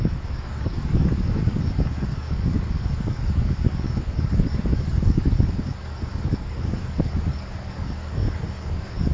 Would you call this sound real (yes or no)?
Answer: no